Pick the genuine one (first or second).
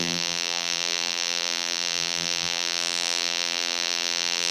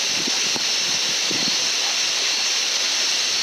second